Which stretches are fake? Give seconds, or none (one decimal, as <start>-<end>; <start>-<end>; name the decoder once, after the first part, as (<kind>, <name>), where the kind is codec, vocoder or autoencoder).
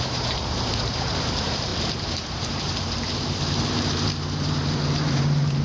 0.0-5.6 (vocoder, BigVGAN v2)